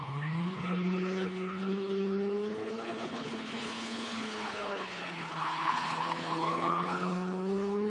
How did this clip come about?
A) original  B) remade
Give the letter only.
B